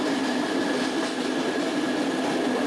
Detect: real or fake real